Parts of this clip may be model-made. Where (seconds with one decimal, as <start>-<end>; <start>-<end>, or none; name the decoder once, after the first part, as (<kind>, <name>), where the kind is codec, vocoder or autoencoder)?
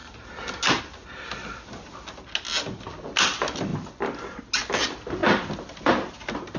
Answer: none